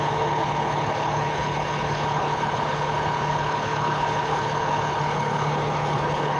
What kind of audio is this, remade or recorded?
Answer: remade